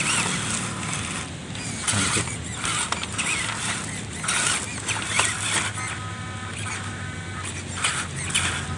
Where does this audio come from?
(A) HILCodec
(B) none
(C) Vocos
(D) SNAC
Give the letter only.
B